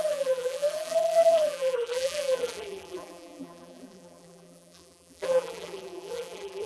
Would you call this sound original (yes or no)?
no